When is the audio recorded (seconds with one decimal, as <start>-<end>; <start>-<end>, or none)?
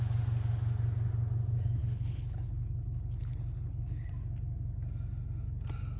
0.0-1.8; 4.1-6.0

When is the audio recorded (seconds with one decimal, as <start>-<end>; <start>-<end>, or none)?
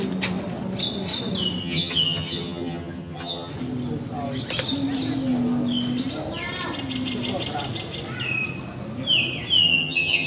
0.0-1.6; 3.5-9.6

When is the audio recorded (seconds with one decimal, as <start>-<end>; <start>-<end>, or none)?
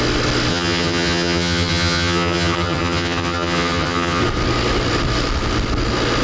0.0-0.5; 4.2-6.2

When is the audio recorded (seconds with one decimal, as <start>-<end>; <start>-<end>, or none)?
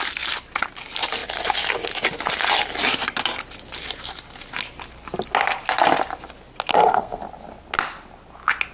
0.0-6.7; 7.2-8.7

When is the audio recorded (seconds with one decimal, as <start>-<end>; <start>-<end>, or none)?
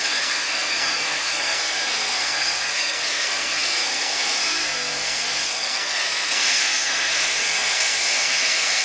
none